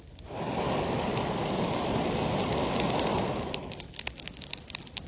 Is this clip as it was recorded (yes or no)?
yes